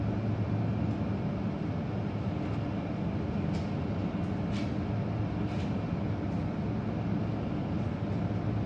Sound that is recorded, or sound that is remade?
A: recorded